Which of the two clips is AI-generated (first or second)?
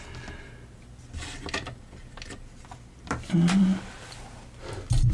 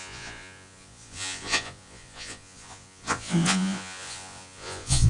second